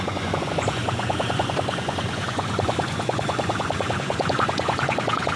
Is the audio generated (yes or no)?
yes